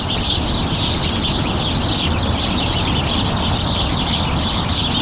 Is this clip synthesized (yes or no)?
yes